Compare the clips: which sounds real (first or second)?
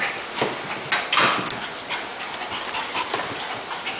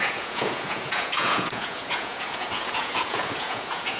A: first